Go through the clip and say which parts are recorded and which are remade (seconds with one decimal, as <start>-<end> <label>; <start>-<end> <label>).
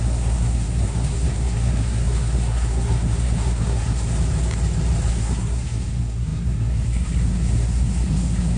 0.0-4.1 remade; 4.1-5.1 recorded; 5.1-8.6 remade